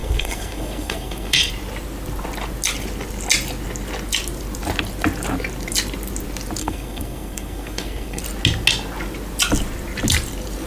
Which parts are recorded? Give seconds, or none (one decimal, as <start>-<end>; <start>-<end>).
1.5-6.6; 8.2-10.7